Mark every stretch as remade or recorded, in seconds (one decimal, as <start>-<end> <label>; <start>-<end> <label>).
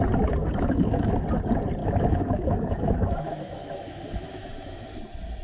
0.0-0.4 recorded; 0.4-1.1 remade; 1.1-1.8 recorded; 1.8-5.0 remade; 5.0-5.4 recorded